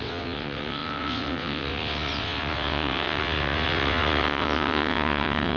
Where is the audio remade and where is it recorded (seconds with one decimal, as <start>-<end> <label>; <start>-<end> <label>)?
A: 0.0-5.6 remade